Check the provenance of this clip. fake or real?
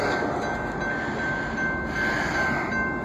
real